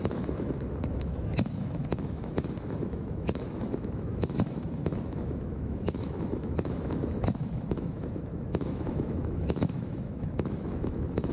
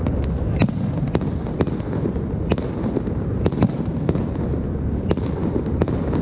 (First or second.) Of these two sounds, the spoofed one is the first